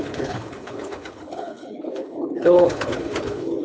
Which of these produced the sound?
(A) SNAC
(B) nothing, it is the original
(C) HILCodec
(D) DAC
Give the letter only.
C